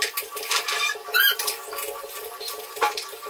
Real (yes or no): no